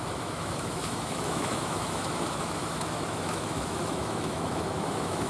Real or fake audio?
fake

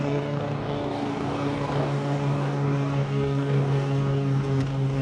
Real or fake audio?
fake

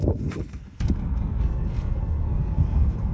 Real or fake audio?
fake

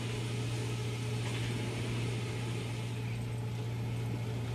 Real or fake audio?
real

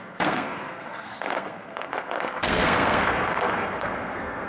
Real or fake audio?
fake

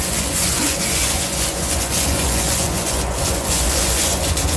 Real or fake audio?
fake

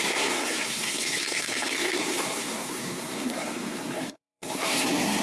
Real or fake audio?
fake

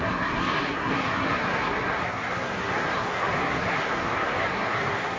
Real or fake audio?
fake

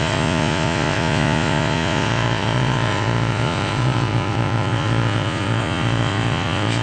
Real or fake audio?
fake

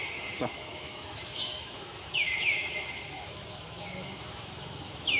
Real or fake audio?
fake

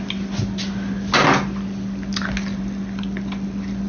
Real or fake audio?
real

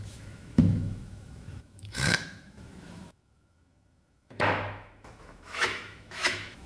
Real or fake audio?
fake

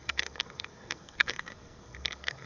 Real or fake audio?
fake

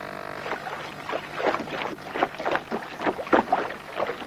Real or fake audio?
real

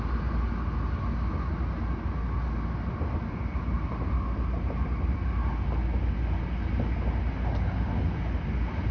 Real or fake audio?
real